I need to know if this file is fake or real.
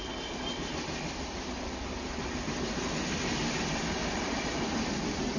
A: real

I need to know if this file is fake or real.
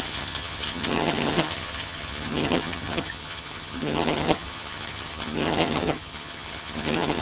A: fake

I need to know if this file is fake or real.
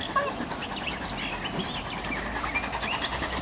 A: real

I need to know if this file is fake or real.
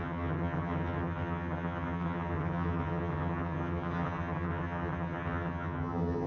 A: fake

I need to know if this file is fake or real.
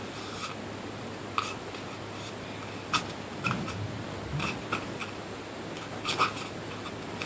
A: real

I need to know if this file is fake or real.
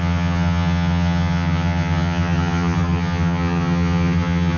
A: fake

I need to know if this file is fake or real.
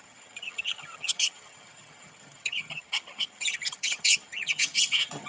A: fake